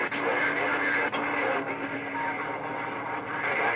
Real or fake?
real